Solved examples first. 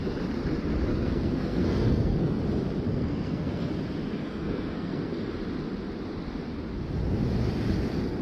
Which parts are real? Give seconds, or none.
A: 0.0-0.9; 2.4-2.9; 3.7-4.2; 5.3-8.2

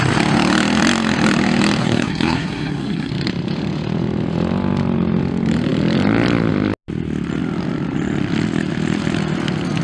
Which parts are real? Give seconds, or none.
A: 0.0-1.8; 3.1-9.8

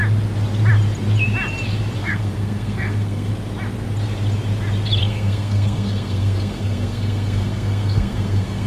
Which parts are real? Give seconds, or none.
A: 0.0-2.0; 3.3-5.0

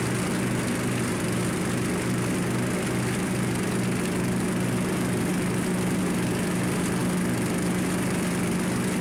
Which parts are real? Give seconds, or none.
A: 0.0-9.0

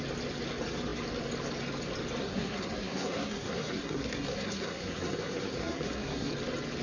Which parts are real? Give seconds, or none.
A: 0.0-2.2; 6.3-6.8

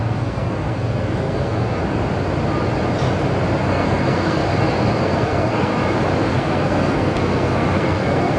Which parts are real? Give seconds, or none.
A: 1.8-3.7; 4.4-5.0; 5.7-6.3

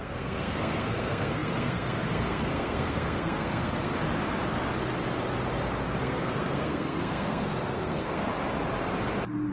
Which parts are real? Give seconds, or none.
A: 3.9-6.0; 8.3-9.5

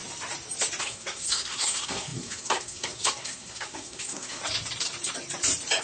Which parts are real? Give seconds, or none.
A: 0.0-0.8; 4.4-5.8